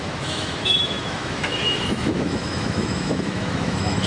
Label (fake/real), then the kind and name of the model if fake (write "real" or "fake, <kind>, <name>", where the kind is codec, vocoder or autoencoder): fake, autoencoder, DAC-VAE